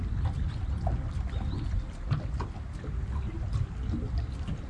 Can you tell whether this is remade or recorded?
recorded